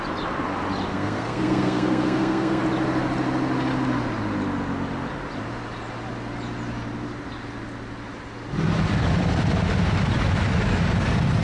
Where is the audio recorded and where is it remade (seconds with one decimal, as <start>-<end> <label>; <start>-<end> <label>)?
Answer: 0.0-0.9 recorded; 0.9-2.6 remade; 2.6-11.4 recorded

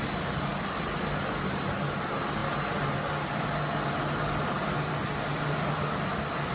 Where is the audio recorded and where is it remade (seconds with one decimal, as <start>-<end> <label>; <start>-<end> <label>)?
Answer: 0.0-6.5 recorded

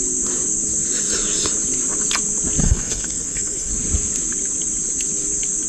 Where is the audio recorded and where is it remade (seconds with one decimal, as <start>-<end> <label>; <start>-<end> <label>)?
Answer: 0.0-2.6 recorded; 2.6-3.7 remade; 3.7-5.7 recorded

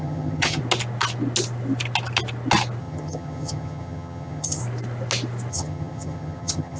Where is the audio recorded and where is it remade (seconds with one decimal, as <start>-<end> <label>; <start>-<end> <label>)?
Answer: 0.0-0.6 remade; 0.6-2.8 recorded; 2.8-4.6 remade; 4.6-5.5 recorded; 5.5-6.8 remade

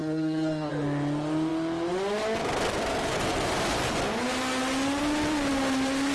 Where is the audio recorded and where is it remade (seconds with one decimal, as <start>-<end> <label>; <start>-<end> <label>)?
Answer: 0.0-0.7 remade; 0.7-6.1 recorded

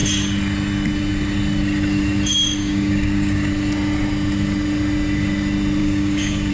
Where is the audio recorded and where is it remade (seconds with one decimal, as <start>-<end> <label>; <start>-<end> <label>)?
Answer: 0.0-2.6 recorded; 2.6-3.5 remade; 3.5-5.8 recorded; 5.8-6.5 remade